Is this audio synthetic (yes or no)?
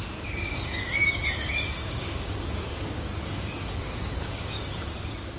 yes